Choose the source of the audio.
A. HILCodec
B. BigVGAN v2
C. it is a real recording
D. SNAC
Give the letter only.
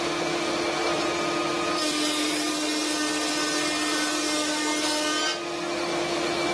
C